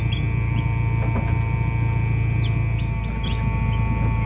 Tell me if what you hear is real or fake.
real